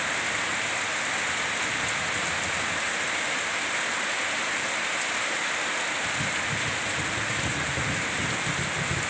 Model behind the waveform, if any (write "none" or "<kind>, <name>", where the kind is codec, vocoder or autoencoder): none